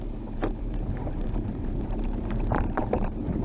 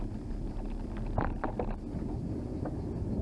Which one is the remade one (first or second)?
first